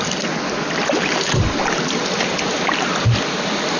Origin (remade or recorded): recorded